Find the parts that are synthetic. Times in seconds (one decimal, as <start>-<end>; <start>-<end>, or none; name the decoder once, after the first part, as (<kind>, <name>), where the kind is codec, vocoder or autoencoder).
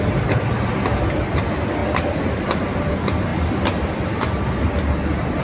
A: none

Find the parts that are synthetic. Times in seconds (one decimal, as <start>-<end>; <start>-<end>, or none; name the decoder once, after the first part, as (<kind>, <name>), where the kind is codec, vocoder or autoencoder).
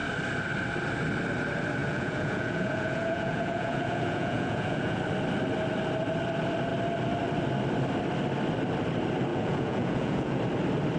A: 1.8-5.0 (vocoder, Vocos); 9.3-10.4